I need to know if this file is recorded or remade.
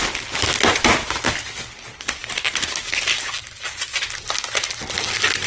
recorded